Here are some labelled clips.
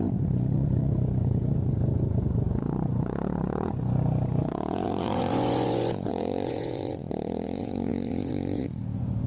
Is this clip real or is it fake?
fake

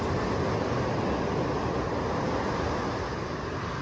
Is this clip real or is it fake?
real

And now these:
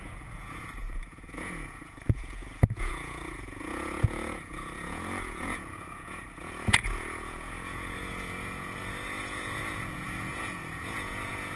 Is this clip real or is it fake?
fake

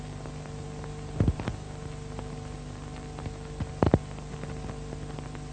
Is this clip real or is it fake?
real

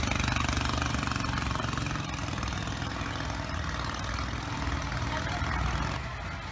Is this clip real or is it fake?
real